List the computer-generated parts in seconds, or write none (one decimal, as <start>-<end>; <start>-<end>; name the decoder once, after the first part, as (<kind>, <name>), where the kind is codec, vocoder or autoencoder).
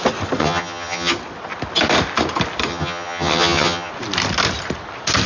0.4-1.1 (vocoder, HiFi-GAN); 2.7-3.9